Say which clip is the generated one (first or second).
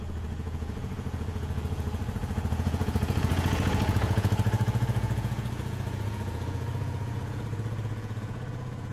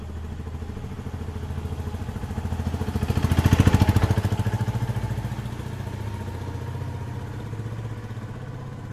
first